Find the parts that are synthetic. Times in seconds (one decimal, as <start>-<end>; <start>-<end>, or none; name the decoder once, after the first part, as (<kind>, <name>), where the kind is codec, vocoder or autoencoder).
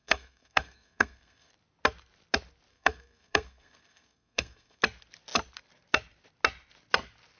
0.0-1.5 (codec, SNAC); 2.7-4.8